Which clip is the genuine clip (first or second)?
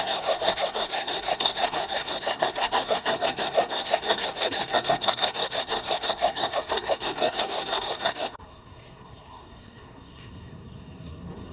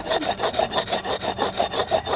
second